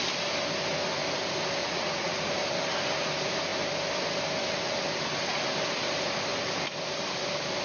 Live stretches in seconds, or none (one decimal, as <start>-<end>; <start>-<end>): 0.0-1.6; 2.3-7.6